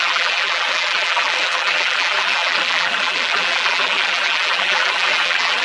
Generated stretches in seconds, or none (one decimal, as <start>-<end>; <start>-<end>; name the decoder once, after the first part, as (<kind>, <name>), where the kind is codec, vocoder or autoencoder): 0.0-5.6 (vocoder, BigVGAN v2)